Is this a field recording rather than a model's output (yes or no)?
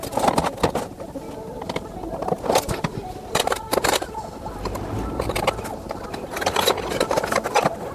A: yes